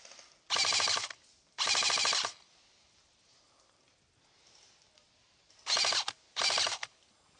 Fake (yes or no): no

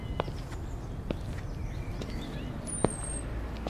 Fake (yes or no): no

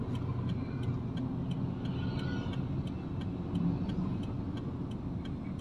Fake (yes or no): no